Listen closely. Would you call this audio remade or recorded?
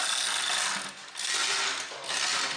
recorded